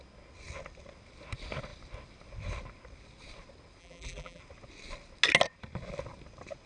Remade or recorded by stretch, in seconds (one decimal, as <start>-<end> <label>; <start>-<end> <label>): 0.0-3.8 recorded; 3.8-4.4 remade; 4.4-6.7 recorded